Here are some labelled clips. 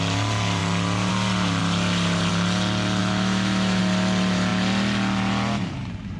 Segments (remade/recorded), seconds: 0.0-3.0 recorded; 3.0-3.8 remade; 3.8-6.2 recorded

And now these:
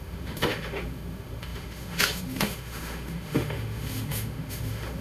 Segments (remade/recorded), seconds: 0.0-5.0 remade